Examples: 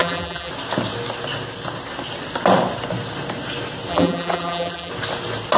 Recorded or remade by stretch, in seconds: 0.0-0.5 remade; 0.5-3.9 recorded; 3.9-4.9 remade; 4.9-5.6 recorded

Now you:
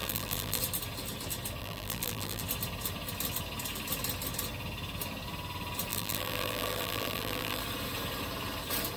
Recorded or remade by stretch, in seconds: 0.0-0.6 remade; 0.6-1.6 recorded; 1.6-2.4 remade; 2.4-5.9 recorded; 5.9-7.6 remade; 7.6-9.0 recorded

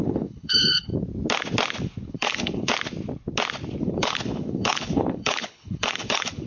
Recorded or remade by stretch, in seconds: 0.0-0.9 remade; 0.9-2.1 recorded; 2.1-2.7 remade; 2.7-3.8 recorded; 3.8-6.5 remade

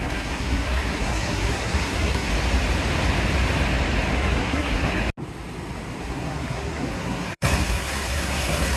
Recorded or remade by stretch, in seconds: 0.0-2.3 remade; 2.3-4.1 recorded; 4.1-5.0 remade; 5.0-6.0 recorded; 6.0-8.8 remade

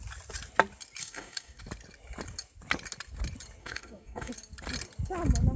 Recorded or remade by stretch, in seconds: 0.0-1.0 recorded; 1.0-1.6 remade; 1.6-3.6 recorded; 3.6-4.3 remade; 4.3-5.6 recorded

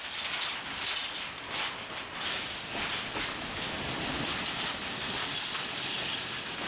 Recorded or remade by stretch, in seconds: 0.0-6.7 recorded